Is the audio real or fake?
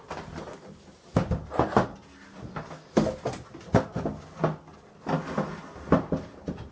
real